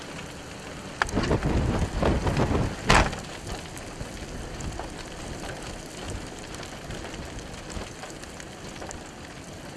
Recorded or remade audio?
recorded